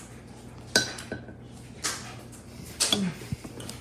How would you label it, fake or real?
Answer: real